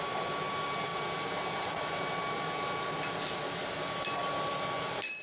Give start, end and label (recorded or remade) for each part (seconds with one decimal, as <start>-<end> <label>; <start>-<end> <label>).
0.0-5.2 recorded